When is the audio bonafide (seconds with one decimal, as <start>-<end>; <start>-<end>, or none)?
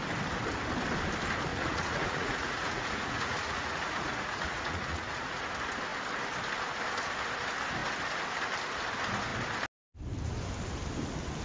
0.0-1.5; 5.4-11.4